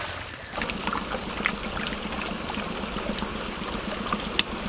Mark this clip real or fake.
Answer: real